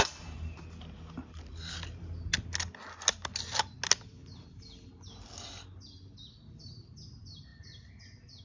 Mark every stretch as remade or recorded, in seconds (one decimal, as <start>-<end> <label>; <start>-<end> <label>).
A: 0.0-8.4 recorded